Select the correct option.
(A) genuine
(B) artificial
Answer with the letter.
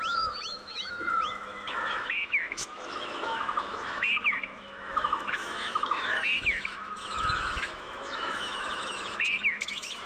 B